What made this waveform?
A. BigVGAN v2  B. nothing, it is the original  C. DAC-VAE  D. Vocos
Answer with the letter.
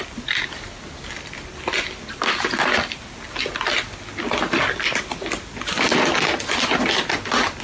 B